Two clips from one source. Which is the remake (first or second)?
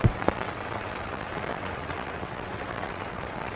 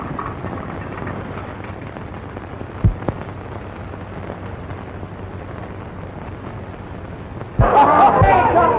first